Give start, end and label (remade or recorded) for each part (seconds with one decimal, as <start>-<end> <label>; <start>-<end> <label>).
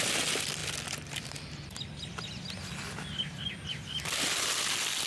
0.0-5.1 recorded